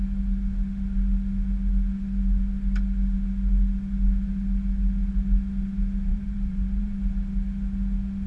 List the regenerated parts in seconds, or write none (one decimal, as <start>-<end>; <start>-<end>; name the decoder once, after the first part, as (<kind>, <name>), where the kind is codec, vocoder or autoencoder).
6.1-7.0 (vocoder, BigVGAN v2)

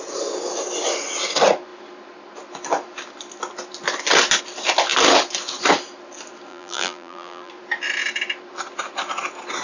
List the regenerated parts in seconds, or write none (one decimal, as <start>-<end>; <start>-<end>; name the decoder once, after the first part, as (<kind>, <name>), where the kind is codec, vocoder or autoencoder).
6.5-7.5 (vocoder, BigVGAN v2)

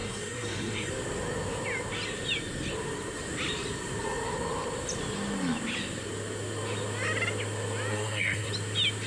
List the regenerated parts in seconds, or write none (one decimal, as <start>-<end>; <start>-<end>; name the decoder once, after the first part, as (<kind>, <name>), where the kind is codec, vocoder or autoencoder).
0.0-0.9 (codec, SNAC); 7.9-8.5

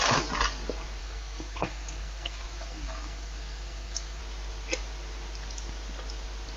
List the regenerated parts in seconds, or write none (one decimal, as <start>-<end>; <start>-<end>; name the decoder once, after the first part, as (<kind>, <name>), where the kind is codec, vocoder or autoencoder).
1.0-4.2 (codec, SNAC)

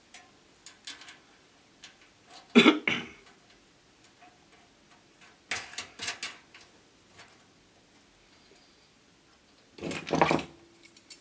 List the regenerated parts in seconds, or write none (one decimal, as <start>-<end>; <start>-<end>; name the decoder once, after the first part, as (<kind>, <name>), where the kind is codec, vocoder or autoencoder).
none

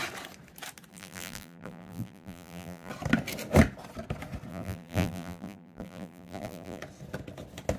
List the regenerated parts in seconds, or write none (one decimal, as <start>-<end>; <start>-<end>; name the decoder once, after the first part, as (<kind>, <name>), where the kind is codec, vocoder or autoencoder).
0.9-2.9 (vocoder, BigVGAN v2); 4.5-6.8